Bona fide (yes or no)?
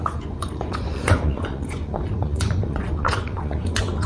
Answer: no